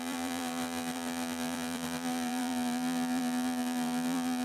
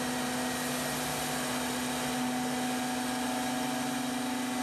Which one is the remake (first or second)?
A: first